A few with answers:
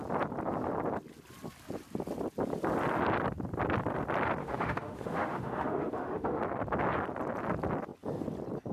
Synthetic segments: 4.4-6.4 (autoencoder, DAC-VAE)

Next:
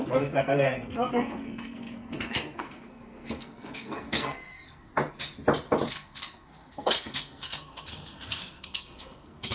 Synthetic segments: 0.0-4.9 (codec, SNAC); 5.9-9.5

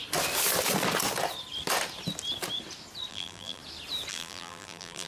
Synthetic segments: 3.1-3.6 (vocoder, BigVGAN v2); 4.1-5.1

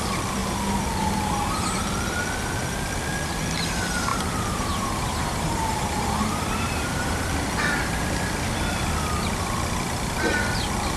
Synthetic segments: 4.1-7.2 (vocoder, BigVGAN v2)

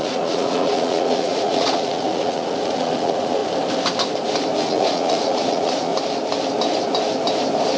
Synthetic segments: 0.0-3.4 (vocoder, Vocos); 4.6-5.9

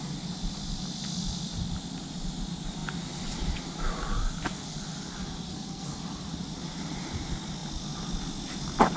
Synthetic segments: 5.5-6.0 (codec, SNAC)

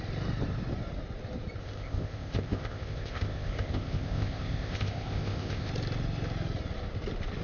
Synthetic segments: 1.6-5.7 (codec, ZipCodec)